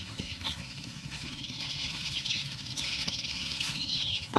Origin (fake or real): fake